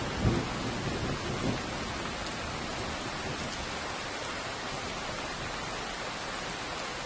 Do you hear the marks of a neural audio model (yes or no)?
no